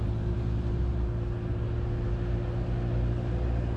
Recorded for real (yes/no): yes